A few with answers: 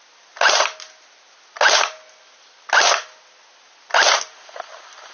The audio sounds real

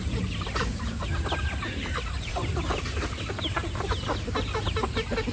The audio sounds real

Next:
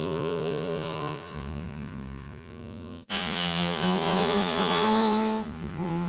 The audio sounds fake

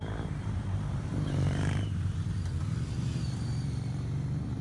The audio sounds fake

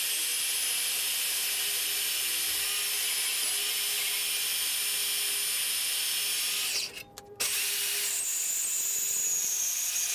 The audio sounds real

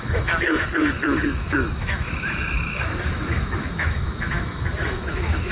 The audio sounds fake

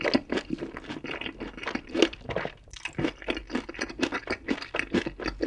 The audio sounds real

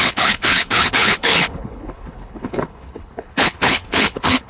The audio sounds fake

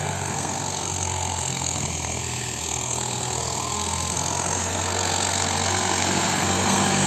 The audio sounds fake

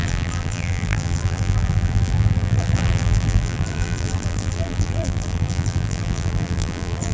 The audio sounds fake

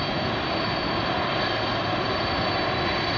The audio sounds real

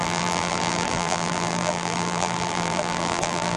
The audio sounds fake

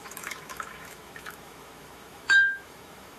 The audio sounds fake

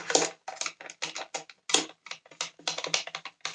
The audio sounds real